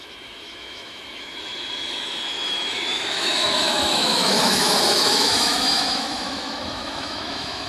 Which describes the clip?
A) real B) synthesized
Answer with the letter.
B